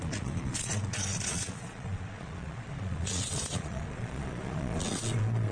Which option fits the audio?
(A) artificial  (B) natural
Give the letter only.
A